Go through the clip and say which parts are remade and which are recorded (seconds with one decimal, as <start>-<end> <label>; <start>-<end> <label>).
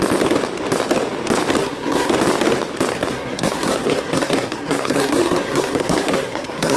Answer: 0.0-1.6 recorded; 1.6-2.1 remade; 2.1-2.9 recorded; 2.9-6.8 remade